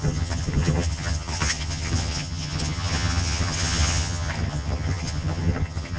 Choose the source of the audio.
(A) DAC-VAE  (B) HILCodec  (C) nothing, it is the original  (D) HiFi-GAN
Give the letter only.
D